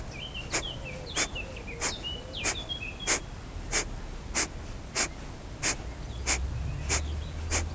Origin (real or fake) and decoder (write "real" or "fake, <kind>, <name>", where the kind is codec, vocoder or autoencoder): real